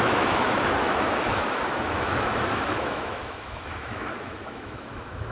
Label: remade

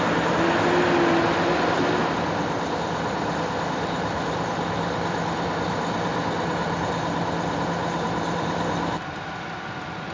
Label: recorded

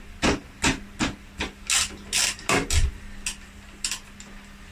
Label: recorded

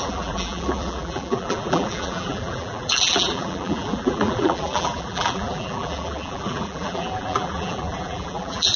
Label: remade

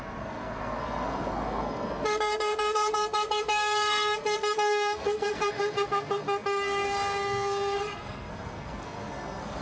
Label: remade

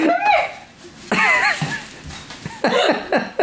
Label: recorded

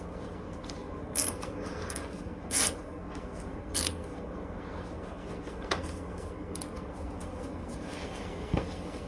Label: remade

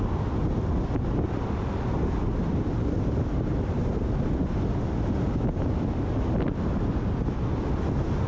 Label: recorded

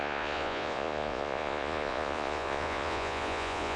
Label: remade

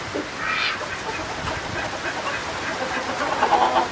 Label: recorded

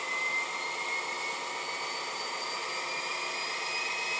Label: recorded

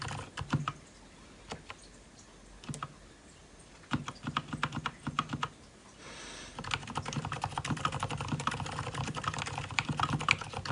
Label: recorded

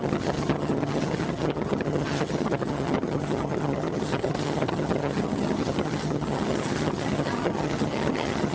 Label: remade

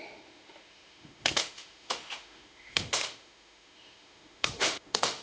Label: remade